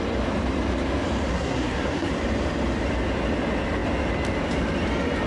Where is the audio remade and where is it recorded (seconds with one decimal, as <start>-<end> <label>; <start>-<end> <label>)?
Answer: 0.0-1.3 recorded; 1.3-2.1 remade; 2.1-5.3 recorded